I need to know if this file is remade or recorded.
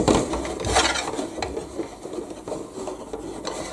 recorded